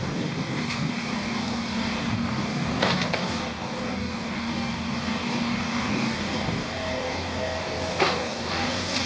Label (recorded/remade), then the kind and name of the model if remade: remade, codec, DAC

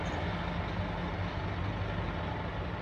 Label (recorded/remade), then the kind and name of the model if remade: recorded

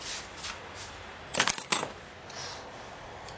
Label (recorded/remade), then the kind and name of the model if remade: recorded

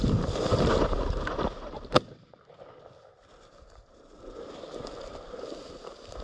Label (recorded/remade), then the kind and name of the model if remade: recorded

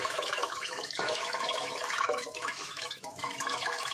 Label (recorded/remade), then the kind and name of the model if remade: remade, autoencoder, DAC-VAE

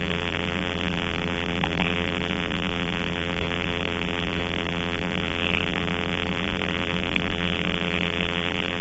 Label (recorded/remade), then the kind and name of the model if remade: remade, vocoder, BigVGAN v2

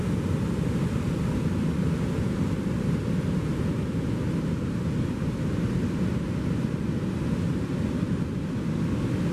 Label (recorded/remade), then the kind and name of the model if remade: recorded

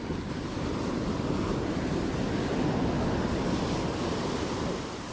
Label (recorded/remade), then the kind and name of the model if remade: recorded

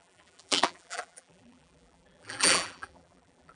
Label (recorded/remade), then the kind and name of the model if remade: remade, vocoder, BigVGAN v2